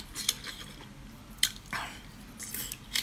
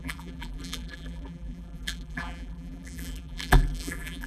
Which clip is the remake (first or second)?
second